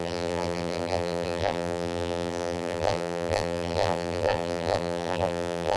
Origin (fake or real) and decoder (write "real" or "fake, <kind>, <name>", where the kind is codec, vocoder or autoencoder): fake, vocoder, BigVGAN v2